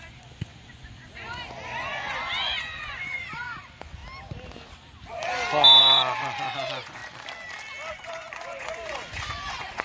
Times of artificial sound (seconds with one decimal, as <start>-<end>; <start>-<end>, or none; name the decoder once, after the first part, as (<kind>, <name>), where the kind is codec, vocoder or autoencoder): 0.0-4.0 (vocoder, Vocos); 5.8-7.0; 7.9-9.8